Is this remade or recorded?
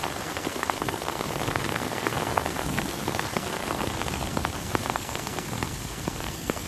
remade